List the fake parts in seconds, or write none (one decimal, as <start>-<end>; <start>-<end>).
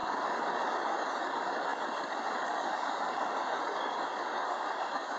0.0-5.2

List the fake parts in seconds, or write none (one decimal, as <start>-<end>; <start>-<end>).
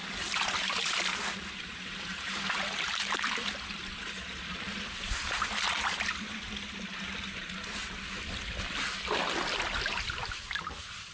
none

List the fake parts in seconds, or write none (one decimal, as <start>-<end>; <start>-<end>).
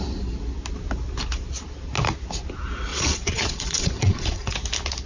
2.9-4.5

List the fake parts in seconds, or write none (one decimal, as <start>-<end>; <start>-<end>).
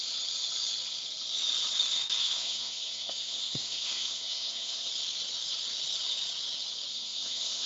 2.2-4.9; 6.9-7.7